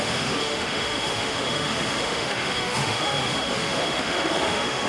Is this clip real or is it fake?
fake